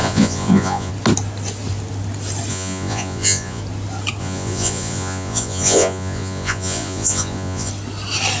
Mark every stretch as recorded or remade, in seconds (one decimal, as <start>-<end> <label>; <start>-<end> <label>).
0.0-0.9 remade; 0.9-2.5 recorded; 2.5-3.6 remade; 3.6-4.2 recorded; 4.2-7.7 remade; 7.7-8.4 recorded